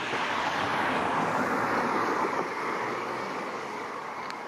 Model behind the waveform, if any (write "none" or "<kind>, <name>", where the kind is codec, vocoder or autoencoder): codec, DAC